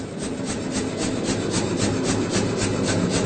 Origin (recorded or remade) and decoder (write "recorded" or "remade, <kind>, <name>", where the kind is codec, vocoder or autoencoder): recorded